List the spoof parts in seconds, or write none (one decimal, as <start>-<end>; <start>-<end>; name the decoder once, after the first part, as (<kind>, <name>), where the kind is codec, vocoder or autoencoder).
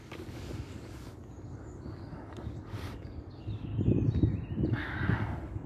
0.0-3.7 (codec, DAC); 4.7-5.7